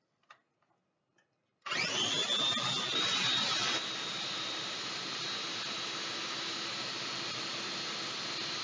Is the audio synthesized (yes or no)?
no